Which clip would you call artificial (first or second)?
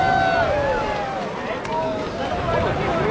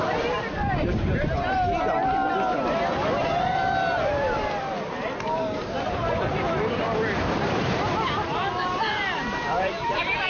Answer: second